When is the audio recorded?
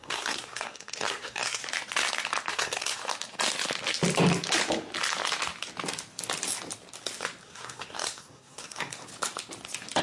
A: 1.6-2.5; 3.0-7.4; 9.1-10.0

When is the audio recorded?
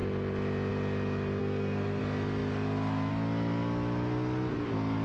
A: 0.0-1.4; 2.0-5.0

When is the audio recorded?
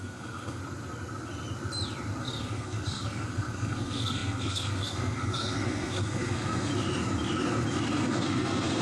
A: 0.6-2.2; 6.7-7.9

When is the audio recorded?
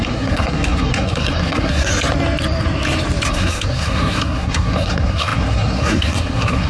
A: 1.9-3.3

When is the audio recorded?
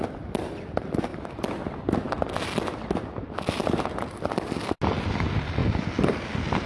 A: 0.0-6.7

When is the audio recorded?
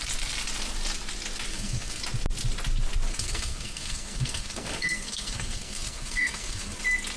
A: 0.0-1.5; 2.0-3.1; 6.8-7.2